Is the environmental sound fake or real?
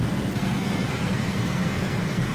fake